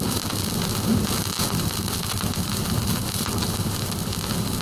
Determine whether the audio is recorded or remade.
recorded